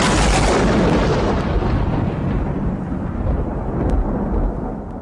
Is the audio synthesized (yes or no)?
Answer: no